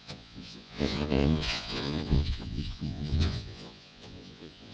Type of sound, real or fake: fake